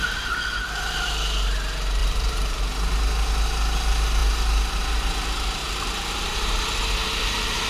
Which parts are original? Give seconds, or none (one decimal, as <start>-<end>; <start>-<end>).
0.0-2.0; 2.6-5.6; 6.6-7.0